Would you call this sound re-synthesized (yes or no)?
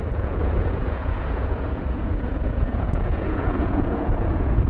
yes